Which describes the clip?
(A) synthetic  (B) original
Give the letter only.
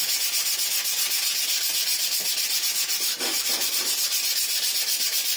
B